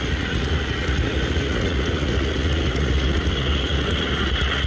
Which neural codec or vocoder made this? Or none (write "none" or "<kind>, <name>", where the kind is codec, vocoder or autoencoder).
vocoder, Vocos